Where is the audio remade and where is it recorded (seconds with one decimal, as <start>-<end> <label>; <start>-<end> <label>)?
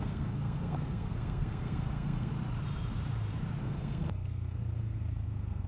0.0-2.3 remade; 2.3-3.6 recorded; 3.6-5.7 remade